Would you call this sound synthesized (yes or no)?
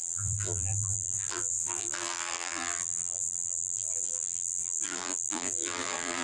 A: yes